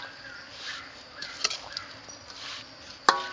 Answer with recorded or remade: recorded